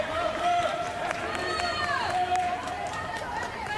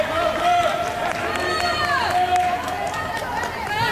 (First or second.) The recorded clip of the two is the second